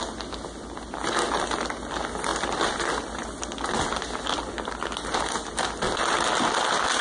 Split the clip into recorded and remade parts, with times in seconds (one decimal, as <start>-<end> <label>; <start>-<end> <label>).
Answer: 0.0-7.0 recorded